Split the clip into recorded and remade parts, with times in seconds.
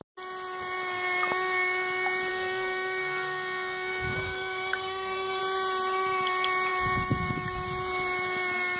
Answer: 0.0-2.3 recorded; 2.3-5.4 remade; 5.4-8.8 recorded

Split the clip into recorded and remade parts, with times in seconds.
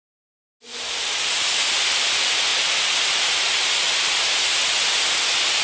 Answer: 0.0-5.6 recorded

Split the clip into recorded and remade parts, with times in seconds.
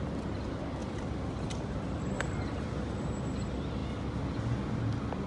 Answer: 0.0-0.8 recorded; 0.8-3.1 remade; 3.1-5.3 recorded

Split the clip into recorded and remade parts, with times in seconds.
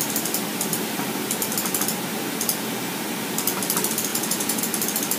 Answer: 0.0-4.1 recorded; 4.1-4.6 remade; 4.6-5.2 recorded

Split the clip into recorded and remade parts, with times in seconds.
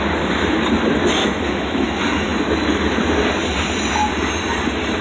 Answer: 0.0-1.2 recorded; 1.2-1.9 remade; 1.9-5.0 recorded